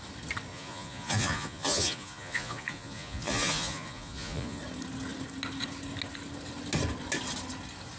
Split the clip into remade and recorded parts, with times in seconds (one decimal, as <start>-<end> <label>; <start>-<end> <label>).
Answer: 0.0-0.5 recorded; 0.5-4.6 remade; 4.6-8.0 recorded